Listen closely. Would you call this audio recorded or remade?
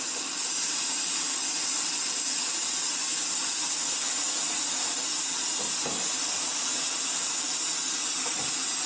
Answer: recorded